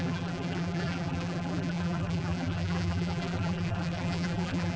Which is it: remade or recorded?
remade